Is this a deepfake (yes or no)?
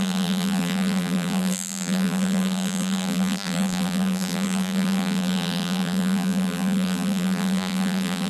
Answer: yes